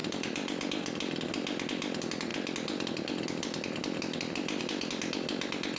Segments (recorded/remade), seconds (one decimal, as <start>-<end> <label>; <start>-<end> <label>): 0.0-0.7 remade; 0.7-5.8 recorded